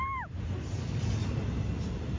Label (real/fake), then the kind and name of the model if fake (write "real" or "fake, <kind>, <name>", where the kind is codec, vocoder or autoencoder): real